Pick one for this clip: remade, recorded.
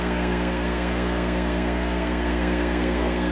remade